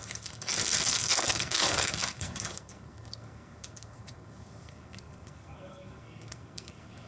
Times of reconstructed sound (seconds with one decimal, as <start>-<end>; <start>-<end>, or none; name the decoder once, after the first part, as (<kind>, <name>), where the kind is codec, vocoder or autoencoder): 0.0-7.1 (codec, SNAC)